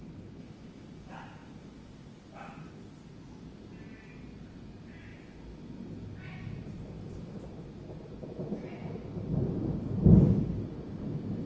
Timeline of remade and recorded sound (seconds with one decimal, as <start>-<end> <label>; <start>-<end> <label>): 0.0-11.5 recorded

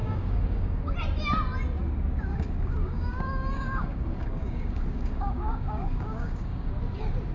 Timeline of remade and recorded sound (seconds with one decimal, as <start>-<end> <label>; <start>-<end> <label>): 0.0-0.8 remade; 0.8-2.3 recorded; 2.3-6.7 remade; 6.7-7.3 recorded